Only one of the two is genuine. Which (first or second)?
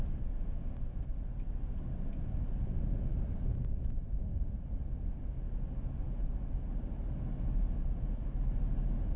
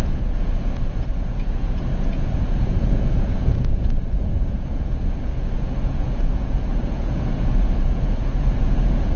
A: first